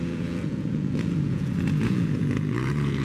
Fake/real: fake